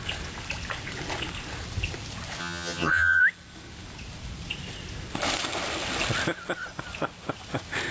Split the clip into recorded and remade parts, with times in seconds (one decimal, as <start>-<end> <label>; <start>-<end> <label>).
0.0-2.4 recorded; 2.4-3.2 remade; 3.2-7.9 recorded